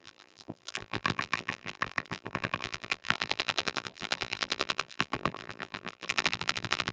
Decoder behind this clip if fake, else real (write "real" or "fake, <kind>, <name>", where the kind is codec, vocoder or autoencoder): fake, vocoder, BigVGAN v2